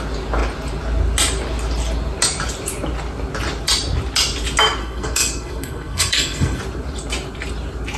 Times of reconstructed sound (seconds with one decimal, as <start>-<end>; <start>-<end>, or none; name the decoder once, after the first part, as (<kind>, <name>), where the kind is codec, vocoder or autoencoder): 4.8-6.6 (codec, SNAC)